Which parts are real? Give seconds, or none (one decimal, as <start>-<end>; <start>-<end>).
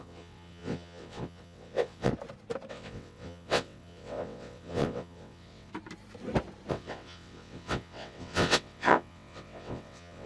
2.1-2.7; 5.7-6.7